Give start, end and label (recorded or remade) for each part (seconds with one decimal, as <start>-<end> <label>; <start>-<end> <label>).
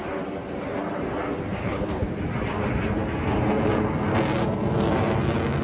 0.0-1.6 recorded; 1.6-2.1 remade; 2.1-5.6 recorded